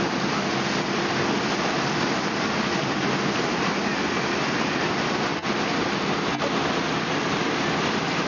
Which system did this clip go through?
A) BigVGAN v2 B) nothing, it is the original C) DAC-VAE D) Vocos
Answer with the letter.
B